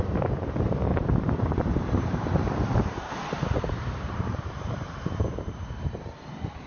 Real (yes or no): no